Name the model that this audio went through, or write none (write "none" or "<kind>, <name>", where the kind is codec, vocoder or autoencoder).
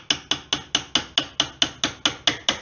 none